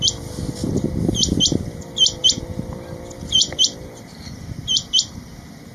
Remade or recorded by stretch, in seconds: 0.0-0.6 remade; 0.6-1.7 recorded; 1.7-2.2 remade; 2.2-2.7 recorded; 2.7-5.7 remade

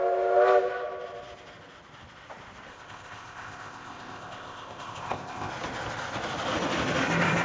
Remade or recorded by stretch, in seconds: 0.0-2.7 recorded; 2.7-5.5 remade; 5.5-7.4 recorded

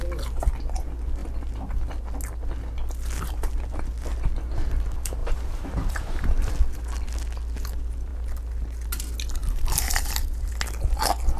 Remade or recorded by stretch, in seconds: 0.0-5.2 recorded; 5.2-6.5 remade; 6.5-9.4 recorded; 9.4-10.5 remade; 10.5-11.4 recorded

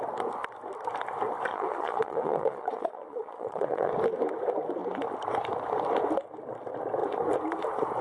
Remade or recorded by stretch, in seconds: 0.0-1.5 recorded; 1.5-3.9 remade; 3.9-8.0 recorded

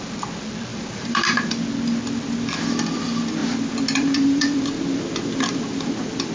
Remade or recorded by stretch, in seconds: 0.0-0.7 recorded; 0.7-1.5 remade; 1.5-3.4 recorded; 3.4-6.3 remade

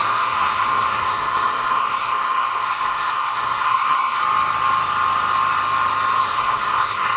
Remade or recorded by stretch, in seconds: 0.0-4.2 remade; 4.2-6.2 recorded; 6.2-7.2 remade